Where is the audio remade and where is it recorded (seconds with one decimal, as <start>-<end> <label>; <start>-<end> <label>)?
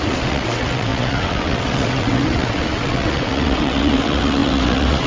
0.0-5.1 remade